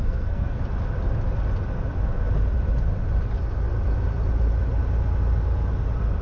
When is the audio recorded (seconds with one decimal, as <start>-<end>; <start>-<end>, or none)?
0.6-6.2